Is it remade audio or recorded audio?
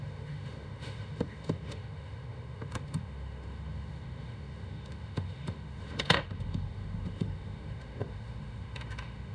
remade